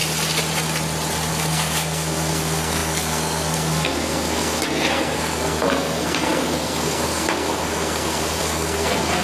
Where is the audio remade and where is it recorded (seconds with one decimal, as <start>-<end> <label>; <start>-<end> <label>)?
0.0-1.3 recorded; 1.3-9.2 remade